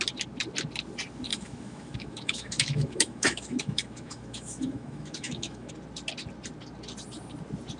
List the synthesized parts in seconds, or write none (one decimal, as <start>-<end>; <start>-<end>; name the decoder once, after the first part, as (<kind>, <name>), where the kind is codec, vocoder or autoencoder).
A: 1.3-5.7 (autoencoder, DAC-VAE)